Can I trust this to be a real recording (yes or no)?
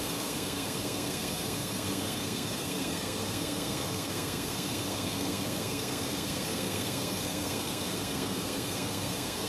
no